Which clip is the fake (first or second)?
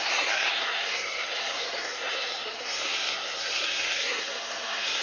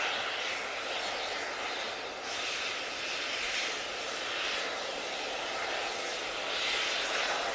first